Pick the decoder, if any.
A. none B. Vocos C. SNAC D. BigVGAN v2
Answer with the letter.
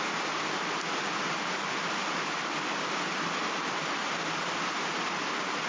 A